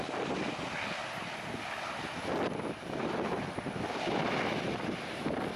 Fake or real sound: real